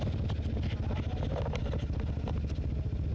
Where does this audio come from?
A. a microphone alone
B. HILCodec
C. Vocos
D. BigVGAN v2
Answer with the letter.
A